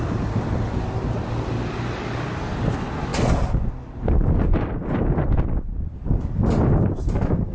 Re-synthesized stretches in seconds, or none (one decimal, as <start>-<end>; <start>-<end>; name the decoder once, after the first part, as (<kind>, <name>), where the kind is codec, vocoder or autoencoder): none